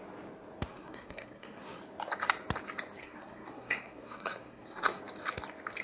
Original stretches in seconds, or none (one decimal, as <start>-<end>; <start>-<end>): 0.0-0.7; 1.8-3.0; 5.0-5.8